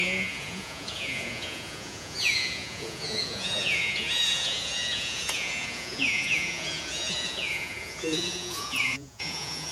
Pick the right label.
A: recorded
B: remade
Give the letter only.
B